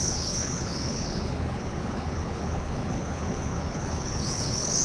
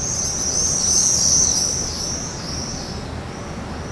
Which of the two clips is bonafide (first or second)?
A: second